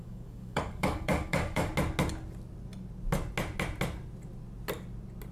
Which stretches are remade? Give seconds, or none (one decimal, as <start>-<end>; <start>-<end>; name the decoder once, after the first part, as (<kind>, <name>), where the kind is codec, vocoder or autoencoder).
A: 0.0-1.7 (codec, DAC)